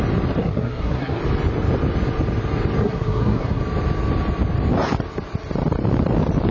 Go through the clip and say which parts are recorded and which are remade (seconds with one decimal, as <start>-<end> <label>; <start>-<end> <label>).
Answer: 0.0-0.4 recorded; 0.4-1.2 remade; 1.2-2.8 recorded; 2.8-3.6 remade; 3.6-6.5 recorded